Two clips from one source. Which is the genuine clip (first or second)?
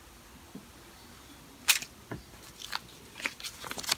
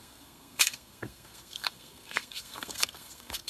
first